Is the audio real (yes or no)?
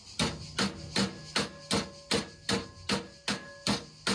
yes